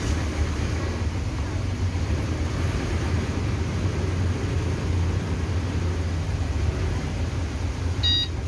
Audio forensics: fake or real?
real